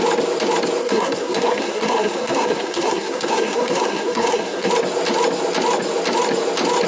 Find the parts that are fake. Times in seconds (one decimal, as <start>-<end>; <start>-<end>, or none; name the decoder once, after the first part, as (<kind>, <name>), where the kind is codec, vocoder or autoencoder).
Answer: 0.8-4.7 (codec, SNAC)